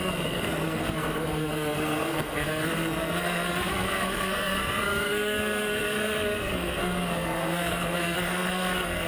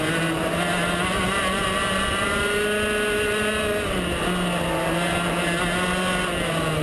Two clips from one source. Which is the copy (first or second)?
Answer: first